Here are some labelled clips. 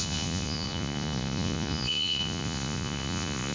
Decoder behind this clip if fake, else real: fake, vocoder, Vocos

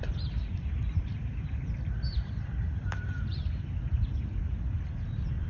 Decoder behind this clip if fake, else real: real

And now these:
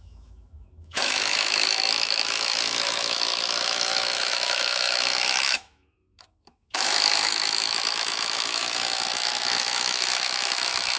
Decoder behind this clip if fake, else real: fake, autoencoder, DAC-VAE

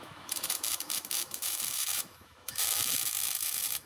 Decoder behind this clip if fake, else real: fake, autoencoder, DAC-VAE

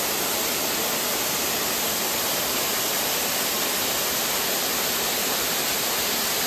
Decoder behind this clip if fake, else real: real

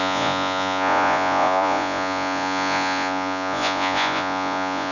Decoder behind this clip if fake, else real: fake, vocoder, Vocos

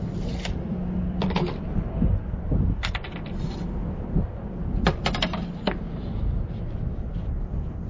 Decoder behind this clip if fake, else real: real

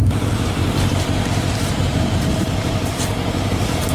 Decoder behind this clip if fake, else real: fake, vocoder, BigVGAN v2